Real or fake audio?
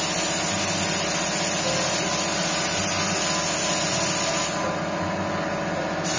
real